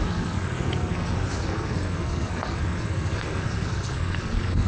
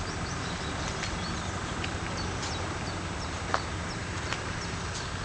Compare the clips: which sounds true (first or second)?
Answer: second